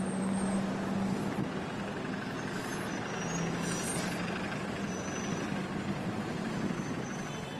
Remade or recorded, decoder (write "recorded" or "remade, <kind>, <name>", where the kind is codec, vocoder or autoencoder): recorded